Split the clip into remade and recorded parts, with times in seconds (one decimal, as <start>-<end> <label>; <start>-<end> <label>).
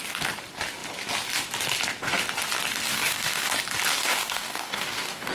0.0-2.9 recorded; 2.9-3.5 remade; 3.5-4.0 recorded; 4.0-5.3 remade